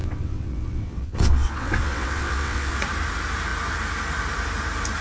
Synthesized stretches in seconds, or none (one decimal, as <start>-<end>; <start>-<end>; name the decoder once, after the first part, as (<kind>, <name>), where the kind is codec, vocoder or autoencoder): 0.0-2.8 (vocoder, WaveNeXt)